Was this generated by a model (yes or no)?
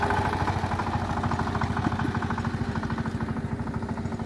no